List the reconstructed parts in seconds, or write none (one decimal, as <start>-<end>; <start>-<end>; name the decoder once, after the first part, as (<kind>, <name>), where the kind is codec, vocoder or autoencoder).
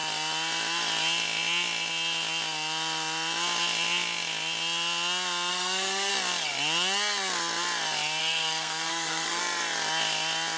5.5-6.1 (codec, SNAC); 8.2-9.4